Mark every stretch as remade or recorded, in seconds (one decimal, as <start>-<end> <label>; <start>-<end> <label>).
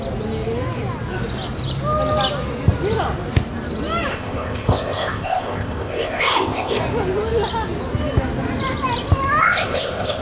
0.0-4.1 recorded; 4.1-6.8 remade; 6.8-9.4 recorded; 9.4-10.2 remade